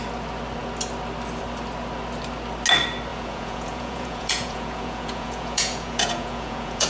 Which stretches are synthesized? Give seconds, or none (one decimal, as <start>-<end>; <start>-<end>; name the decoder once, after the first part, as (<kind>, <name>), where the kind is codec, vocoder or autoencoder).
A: 3.1-6.9 (vocoder, Vocos)

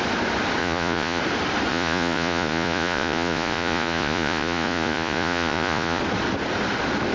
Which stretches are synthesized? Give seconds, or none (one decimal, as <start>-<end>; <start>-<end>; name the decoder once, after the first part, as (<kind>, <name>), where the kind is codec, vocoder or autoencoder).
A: 0.6-1.2 (vocoder, Vocos); 1.7-6.0

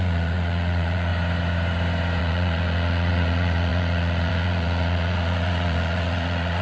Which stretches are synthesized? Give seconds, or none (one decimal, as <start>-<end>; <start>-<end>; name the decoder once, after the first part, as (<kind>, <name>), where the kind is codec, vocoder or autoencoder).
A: 0.0-1.1 (vocoder, Vocos); 2.2-6.6

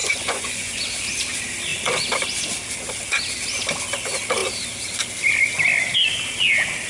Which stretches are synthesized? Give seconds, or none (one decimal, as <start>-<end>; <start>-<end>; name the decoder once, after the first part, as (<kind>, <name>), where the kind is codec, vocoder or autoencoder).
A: 0.0-0.8 (vocoder, Vocos)